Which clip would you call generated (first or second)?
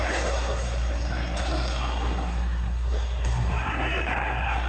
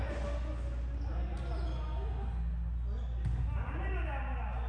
first